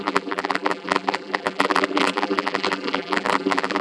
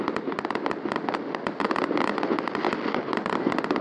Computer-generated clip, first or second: first